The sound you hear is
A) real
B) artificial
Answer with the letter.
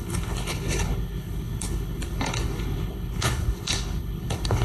B